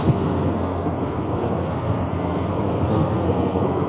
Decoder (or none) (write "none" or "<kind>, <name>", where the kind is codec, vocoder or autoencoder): codec, SNAC